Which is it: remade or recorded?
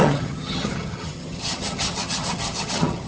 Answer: remade